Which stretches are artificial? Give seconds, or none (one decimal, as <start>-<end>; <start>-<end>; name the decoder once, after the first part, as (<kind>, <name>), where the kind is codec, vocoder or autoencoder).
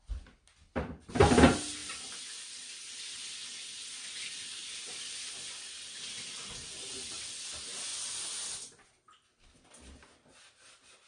none